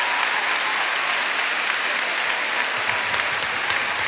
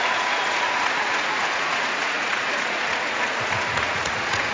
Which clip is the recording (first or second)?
first